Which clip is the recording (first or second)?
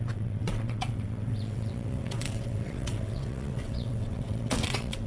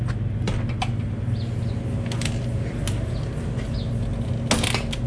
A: second